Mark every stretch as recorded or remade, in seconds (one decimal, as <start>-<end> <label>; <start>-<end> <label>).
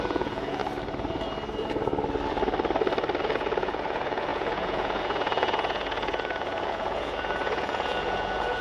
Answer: 0.0-0.6 remade; 0.6-3.2 recorded; 3.2-8.6 remade